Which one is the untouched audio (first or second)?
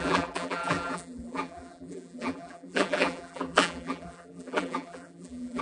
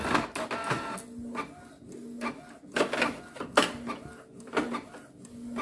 second